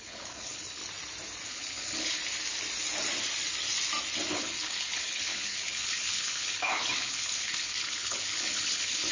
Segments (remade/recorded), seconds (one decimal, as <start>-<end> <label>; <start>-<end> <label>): 0.0-0.8 remade; 0.8-1.5 recorded; 1.5-2.2 remade; 2.2-4.3 recorded; 4.3-9.1 remade